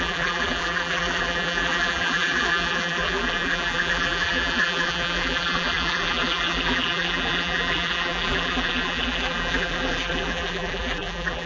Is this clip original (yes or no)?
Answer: no